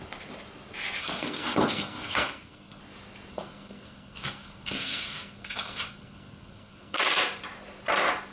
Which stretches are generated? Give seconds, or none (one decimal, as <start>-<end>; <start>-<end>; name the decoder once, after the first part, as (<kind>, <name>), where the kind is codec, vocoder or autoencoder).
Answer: 1.0-2.8 (codec, SNAC); 3.3-7.0